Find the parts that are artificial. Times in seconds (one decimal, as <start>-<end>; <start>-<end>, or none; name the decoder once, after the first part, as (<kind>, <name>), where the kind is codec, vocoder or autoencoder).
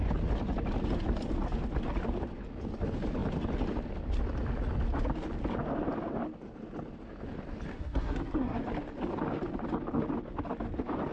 7.7-8.6 (codec, SNAC)